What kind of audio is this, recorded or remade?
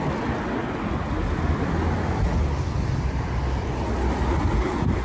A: recorded